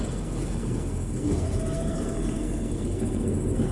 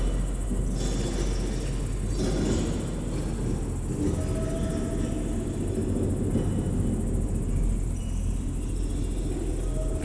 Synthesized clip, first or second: first